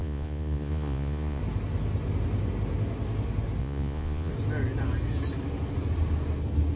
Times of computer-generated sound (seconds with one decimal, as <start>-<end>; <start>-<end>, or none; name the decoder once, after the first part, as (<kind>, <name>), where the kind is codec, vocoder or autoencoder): 0.0-1.4 (vocoder, Vocos); 3.6-4.3

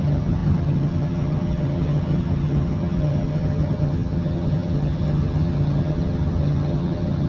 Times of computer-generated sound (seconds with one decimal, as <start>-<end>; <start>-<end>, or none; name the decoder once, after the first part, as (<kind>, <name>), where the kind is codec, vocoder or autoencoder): 0.0-7.3 (vocoder, HiFi-GAN)

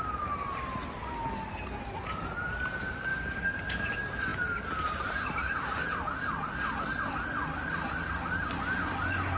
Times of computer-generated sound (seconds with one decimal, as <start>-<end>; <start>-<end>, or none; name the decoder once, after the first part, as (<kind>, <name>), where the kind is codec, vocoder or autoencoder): 3.1-3.9 (codec, DAC)

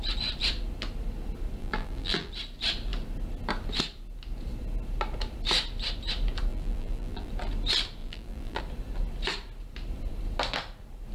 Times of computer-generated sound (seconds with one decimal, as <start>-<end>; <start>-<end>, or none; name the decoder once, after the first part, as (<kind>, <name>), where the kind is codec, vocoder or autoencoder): 1.6-2.3 (vocoder, BigVGAN v2); 6.5-7.3; 8.0-8.6

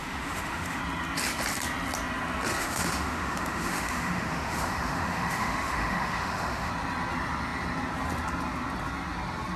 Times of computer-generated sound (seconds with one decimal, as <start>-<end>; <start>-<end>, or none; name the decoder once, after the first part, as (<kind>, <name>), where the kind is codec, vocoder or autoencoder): 0.0-0.8 (autoencoder, DAC-VAE); 2.6-6.7